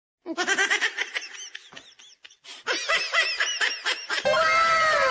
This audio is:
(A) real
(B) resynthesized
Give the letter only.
A